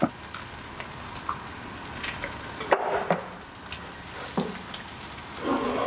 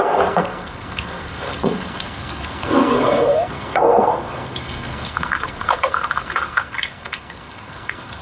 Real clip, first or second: first